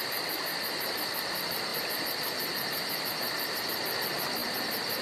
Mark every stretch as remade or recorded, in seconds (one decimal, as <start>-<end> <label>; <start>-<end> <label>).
0.0-1.7 recorded; 1.7-3.6 remade; 3.6-5.0 recorded

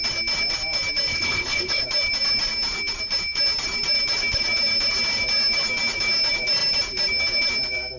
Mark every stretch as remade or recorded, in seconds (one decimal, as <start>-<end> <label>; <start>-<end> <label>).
0.0-1.1 recorded; 1.1-1.8 remade; 1.8-8.0 recorded

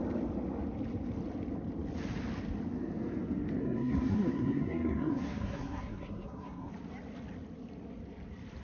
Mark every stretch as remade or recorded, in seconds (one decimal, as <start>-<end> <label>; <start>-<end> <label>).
0.0-3.6 recorded; 3.6-6.7 remade; 6.7-8.6 recorded

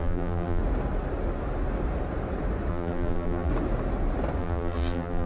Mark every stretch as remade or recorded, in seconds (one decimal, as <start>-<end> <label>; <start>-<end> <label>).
0.0-0.6 remade; 0.6-2.7 recorded; 2.7-3.5 remade; 3.5-4.4 recorded; 4.4-5.3 remade

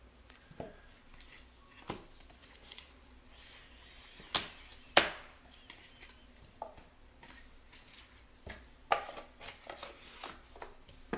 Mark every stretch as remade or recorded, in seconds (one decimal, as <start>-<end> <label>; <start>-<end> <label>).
0.0-2.4 recorded; 2.4-3.1 remade; 3.1-11.2 recorded